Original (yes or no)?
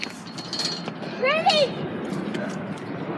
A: yes